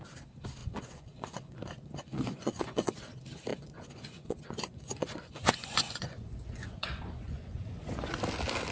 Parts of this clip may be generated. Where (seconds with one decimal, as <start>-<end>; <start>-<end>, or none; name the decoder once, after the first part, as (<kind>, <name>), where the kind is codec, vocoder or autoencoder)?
0.6-3.0 (vocoder, Vocos); 3.5-8.2